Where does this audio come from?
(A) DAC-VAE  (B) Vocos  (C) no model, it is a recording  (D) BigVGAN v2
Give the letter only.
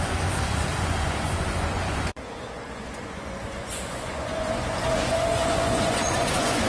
B